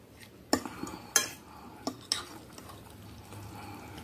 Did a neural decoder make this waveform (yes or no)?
no